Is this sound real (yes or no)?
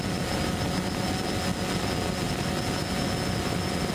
yes